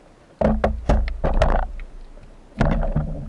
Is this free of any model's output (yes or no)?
yes